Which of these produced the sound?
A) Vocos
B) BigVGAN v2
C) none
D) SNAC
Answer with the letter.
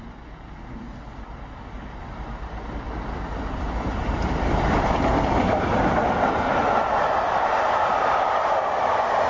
C